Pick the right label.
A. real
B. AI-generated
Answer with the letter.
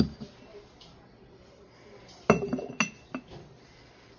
A